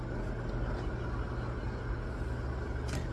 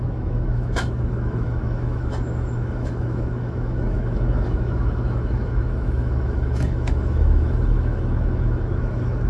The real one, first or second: first